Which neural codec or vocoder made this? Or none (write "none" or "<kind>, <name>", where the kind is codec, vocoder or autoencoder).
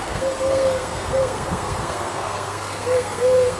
codec, SNAC